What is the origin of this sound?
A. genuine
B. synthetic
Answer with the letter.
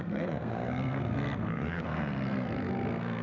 B